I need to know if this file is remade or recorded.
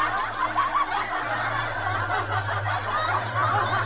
recorded